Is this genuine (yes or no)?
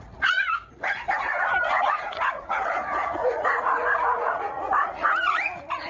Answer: no